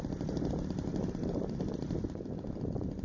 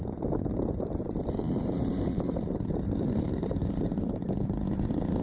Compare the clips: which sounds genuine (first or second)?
first